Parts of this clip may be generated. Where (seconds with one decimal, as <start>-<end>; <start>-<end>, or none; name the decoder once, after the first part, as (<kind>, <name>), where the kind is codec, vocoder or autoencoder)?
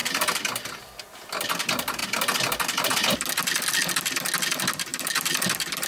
0.0-1.0 (vocoder, BigVGAN v2); 4.9-5.9